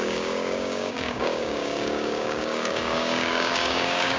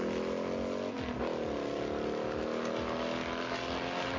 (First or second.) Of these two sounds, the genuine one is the second